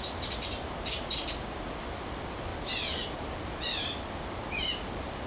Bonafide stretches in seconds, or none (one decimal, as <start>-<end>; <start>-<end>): 0.0-5.3